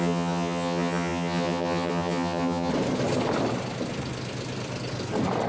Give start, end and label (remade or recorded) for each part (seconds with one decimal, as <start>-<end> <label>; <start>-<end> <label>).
0.0-2.7 remade; 2.7-5.5 recorded